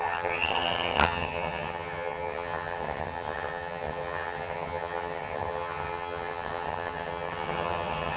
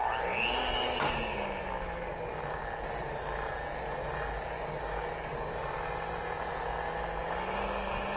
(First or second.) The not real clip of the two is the first